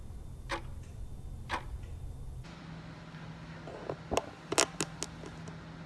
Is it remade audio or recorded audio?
recorded